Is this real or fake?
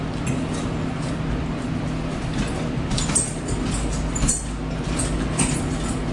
real